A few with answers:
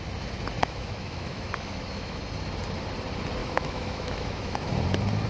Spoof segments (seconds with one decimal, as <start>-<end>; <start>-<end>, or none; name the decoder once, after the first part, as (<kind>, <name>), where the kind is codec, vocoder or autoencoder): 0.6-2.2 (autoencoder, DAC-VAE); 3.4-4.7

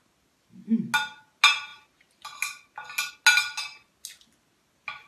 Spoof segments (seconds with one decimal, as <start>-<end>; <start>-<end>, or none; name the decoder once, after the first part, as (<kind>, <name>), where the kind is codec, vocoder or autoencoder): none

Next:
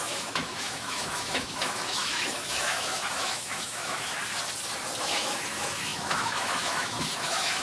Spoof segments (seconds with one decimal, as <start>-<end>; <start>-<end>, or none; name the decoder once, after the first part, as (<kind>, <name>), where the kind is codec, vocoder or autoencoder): 0.0-4.2 (autoencoder, DAC-VAE); 5.0-7.6